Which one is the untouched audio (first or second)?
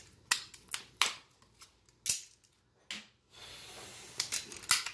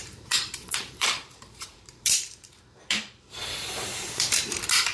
first